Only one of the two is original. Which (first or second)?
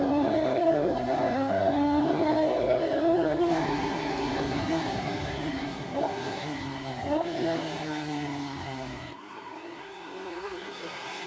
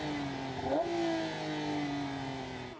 second